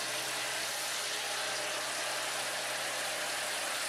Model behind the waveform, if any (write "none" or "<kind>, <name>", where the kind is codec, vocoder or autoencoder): none